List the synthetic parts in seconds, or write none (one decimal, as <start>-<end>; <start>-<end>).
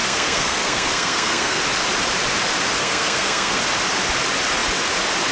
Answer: 0.0-1.6; 2.8-3.6